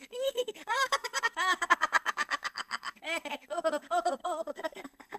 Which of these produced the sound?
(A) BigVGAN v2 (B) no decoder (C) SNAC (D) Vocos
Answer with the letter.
C